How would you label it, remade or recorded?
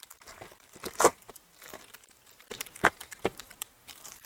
remade